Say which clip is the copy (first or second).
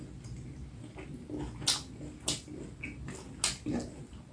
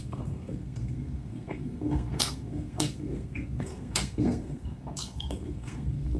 second